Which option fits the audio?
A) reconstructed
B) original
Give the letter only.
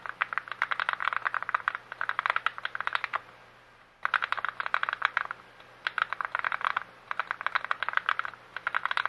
B